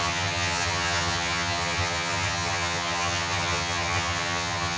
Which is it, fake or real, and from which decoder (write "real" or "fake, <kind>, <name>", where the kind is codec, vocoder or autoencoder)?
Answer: fake, vocoder, HiFi-GAN